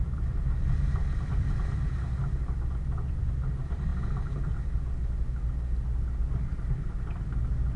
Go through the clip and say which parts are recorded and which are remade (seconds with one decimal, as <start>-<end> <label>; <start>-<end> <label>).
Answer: 0.0-7.8 recorded